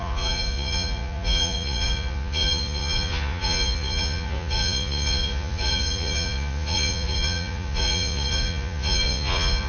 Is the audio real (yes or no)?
no